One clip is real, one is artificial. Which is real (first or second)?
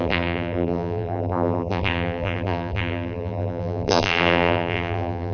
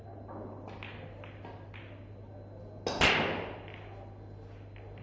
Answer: second